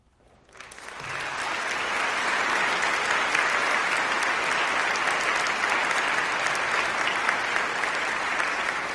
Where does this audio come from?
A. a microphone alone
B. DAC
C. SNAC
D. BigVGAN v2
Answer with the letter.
A